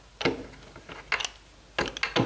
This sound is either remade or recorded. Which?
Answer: recorded